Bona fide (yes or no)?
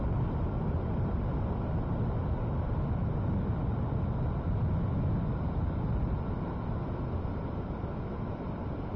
yes